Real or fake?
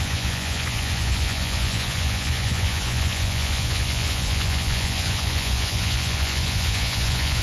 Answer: fake